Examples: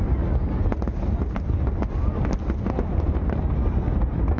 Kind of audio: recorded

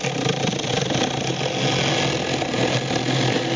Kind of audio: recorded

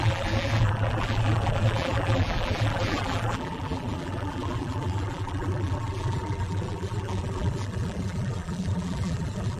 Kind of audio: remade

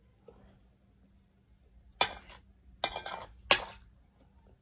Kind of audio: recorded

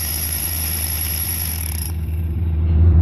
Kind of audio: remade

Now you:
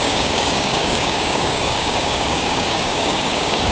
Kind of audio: remade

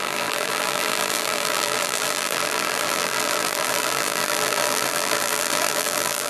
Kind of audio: remade